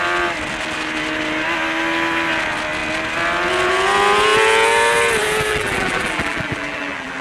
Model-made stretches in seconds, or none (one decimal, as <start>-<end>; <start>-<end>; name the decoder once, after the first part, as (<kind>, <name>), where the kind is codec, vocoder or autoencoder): 5.5-7.2 (vocoder, BigVGAN v2)